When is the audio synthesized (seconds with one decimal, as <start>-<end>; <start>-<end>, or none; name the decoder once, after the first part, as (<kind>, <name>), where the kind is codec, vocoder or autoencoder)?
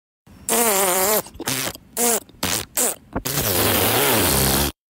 0.0-5.0 (vocoder, BigVGAN v2)